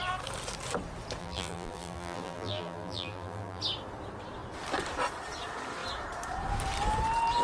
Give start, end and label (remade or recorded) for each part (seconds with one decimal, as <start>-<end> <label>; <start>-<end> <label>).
0.0-1.2 recorded; 1.2-3.6 remade; 3.6-7.4 recorded